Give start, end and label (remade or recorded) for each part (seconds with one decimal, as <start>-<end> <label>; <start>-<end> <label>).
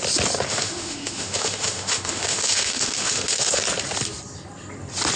0.0-0.5 recorded; 0.5-3.6 remade; 3.6-5.2 recorded